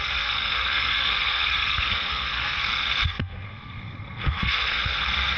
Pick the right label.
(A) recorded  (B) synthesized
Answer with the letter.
B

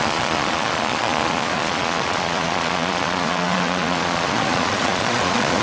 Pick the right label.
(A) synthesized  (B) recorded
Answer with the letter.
A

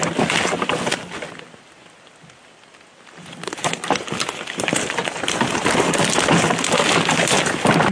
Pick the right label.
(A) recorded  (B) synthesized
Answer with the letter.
A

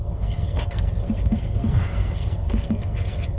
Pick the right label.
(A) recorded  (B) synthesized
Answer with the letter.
B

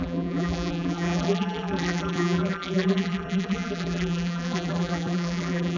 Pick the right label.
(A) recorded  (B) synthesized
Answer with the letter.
B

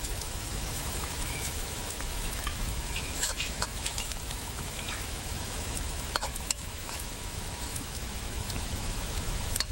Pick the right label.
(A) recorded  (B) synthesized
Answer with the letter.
B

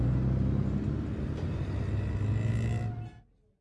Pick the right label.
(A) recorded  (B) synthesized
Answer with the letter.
A